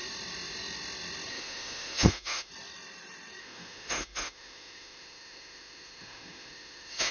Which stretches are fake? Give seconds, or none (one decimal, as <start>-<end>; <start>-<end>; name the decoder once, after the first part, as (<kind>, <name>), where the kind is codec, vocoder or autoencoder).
1.3-2.5 (autoencoder, DAC-VAE); 3.4-7.1